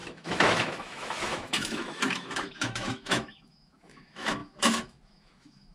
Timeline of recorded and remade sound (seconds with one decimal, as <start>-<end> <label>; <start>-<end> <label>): 0.0-5.7 remade